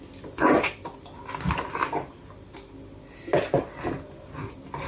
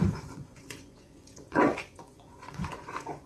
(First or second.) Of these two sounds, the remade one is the second